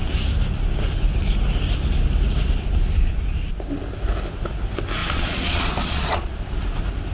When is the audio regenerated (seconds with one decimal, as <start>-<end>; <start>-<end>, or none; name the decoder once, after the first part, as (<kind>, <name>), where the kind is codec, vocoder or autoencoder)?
5.0-6.4 (vocoder, Vocos)